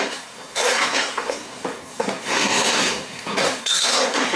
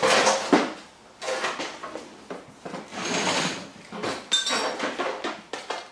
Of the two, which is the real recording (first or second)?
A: second